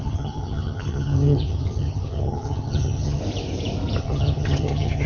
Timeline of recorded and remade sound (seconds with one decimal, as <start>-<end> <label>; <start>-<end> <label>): 0.0-3.2 remade; 3.2-4.0 recorded; 4.0-5.1 remade